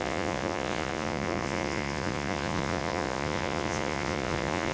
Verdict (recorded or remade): remade